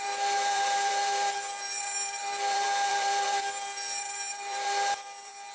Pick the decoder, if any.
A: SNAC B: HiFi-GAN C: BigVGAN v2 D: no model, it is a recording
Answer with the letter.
C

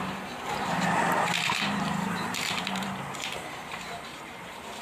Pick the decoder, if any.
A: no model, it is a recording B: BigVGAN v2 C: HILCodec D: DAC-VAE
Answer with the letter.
B